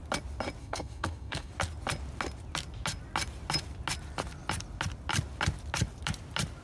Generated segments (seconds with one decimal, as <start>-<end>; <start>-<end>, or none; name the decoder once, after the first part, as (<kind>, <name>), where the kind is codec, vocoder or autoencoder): 0.6-1.5 (codec, SNAC)

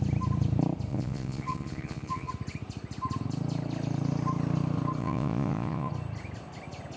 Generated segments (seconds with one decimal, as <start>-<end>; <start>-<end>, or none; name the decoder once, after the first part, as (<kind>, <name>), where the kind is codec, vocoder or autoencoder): 0.9-2.3 (vocoder, Vocos); 5.0-5.9

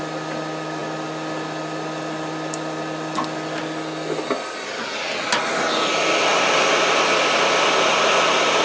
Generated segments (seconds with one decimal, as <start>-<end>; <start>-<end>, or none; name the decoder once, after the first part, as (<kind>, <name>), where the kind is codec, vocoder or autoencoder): none

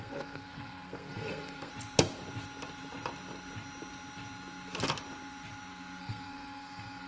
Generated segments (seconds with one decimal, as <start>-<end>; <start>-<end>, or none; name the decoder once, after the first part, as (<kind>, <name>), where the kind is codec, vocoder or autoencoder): 0.0-1.7 (codec, SNAC); 6.0-7.1

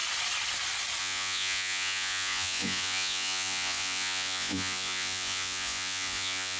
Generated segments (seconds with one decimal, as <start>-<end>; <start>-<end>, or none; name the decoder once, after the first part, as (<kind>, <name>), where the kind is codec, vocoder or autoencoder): 1.0-6.6 (vocoder, Vocos)